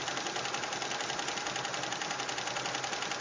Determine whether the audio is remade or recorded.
recorded